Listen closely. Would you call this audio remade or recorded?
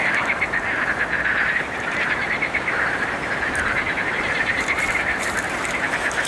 remade